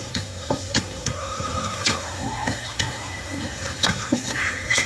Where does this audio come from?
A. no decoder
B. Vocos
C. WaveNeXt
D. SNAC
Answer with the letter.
D